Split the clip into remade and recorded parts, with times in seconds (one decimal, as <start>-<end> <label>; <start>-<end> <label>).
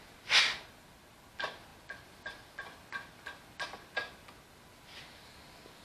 0.0-5.8 recorded